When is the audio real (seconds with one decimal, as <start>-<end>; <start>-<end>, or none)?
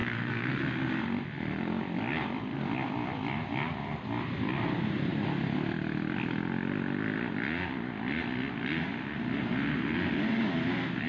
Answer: 0.6-11.1